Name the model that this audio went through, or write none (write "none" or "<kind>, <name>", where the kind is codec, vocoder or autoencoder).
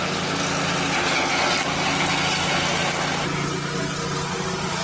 none